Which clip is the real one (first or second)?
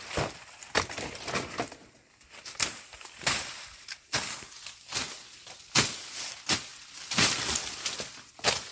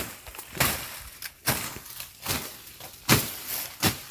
first